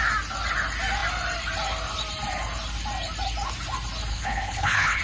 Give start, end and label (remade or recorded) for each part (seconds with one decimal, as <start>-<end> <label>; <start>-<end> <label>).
0.0-4.1 recorded; 4.1-5.0 remade